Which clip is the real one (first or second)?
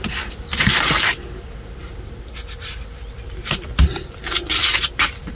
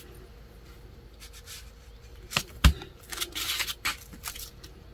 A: second